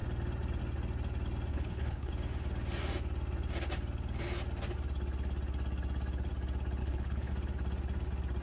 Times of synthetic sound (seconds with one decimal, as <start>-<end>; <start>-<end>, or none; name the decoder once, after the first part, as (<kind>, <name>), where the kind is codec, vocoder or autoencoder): 1.5-2.1 (codec, HILCodec); 6.8-7.3